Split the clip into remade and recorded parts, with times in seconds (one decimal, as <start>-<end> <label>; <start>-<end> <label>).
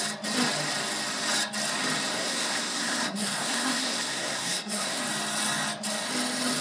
0.0-2.1 recorded; 2.1-5.0 remade; 5.0-6.6 recorded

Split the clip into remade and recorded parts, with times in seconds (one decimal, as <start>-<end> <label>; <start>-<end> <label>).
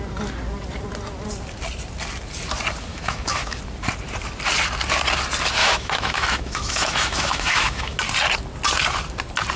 0.0-2.9 recorded; 2.9-3.6 remade; 3.6-5.6 recorded; 5.6-8.0 remade; 8.0-9.6 recorded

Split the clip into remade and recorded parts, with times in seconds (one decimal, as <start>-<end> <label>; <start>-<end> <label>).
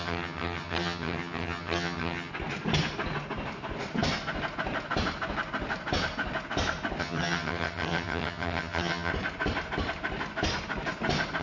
0.0-2.3 remade; 2.3-7.0 recorded; 7.0-9.1 remade; 9.1-11.4 recorded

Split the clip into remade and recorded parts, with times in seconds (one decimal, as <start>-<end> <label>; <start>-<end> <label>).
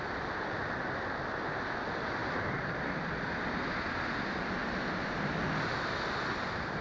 0.0-2.2 recorded; 2.2-3.3 remade; 3.3-6.8 recorded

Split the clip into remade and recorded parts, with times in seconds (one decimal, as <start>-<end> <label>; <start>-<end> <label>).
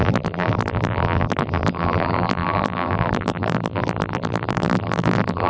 0.0-5.5 remade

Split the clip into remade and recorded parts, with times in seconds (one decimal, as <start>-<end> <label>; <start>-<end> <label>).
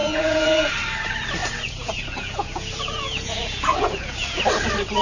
0.0-0.7 remade; 0.7-1.4 recorded; 1.4-4.4 remade; 4.4-5.0 recorded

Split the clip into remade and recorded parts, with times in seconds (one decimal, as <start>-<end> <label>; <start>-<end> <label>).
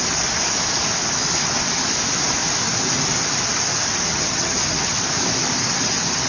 0.0-4.1 recorded; 4.1-5.0 remade; 5.0-6.3 recorded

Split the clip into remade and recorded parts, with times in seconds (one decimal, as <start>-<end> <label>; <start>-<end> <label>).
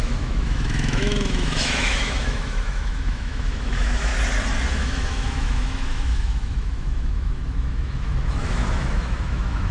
0.0-4.1 remade; 4.1-4.7 recorded; 4.7-9.7 remade